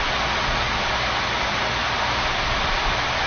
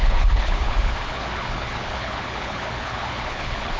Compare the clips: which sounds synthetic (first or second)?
second